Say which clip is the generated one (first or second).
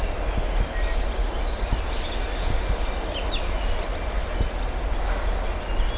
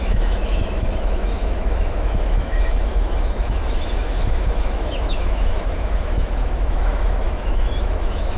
second